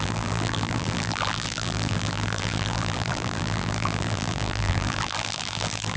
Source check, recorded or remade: remade